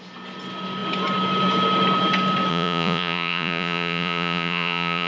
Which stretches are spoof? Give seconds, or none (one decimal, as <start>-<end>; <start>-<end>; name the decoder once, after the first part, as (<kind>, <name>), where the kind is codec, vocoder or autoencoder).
2.5-5.1 (vocoder, Vocos)